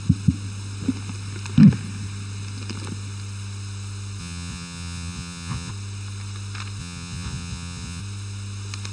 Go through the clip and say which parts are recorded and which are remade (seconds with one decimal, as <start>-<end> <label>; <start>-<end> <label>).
0.0-4.2 recorded; 4.2-5.7 remade; 5.7-6.8 recorded; 6.8-8.0 remade; 8.0-8.9 recorded